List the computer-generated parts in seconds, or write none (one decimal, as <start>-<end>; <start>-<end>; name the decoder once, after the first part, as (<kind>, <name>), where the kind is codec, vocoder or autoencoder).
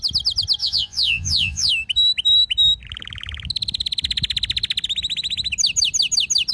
0.6-1.7 (vocoder, Vocos)